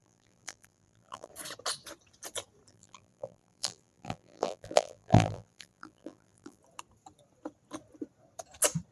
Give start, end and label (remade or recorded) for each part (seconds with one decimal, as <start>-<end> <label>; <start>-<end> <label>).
0.0-1.3 remade; 1.3-2.7 recorded; 2.7-6.6 remade; 6.6-8.9 recorded